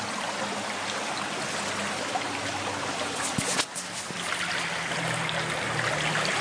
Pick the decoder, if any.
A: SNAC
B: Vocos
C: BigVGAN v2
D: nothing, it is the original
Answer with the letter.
D